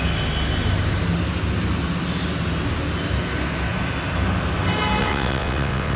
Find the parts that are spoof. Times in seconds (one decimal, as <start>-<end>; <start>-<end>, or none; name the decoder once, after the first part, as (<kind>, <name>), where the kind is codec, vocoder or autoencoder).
5.0-6.0 (vocoder, WaveNeXt)

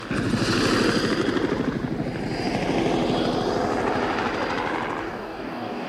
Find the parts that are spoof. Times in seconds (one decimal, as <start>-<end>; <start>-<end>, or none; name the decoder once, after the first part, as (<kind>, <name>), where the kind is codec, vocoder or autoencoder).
5.0-5.9 (codec, DAC)

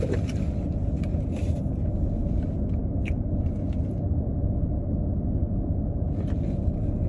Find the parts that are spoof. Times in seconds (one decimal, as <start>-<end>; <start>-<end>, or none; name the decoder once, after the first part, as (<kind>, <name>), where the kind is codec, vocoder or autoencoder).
none

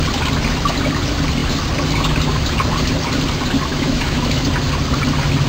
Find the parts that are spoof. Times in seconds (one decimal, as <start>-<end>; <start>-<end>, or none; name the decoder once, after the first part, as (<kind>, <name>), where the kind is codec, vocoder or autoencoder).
3.7-4.4 (autoencoder, DAC-VAE)

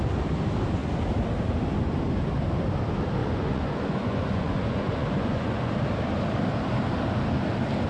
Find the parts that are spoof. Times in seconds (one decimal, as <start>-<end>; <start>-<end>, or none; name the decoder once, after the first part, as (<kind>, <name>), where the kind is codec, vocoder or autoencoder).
3.2-5.7 (vocoder, Vocos)